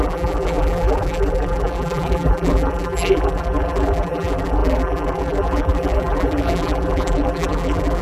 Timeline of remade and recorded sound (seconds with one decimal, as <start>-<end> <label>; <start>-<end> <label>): 0.0-8.0 remade